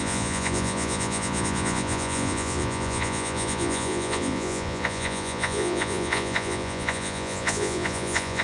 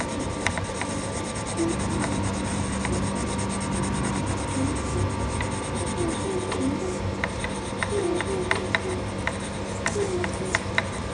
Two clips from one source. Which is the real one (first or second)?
second